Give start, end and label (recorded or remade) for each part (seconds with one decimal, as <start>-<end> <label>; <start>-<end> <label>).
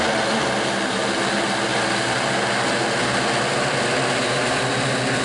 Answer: 0.0-5.2 recorded